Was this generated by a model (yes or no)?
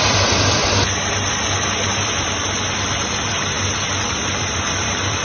yes